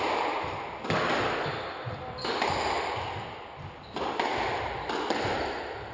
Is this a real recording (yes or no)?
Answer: yes